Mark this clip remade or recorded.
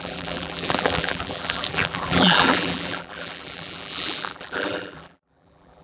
remade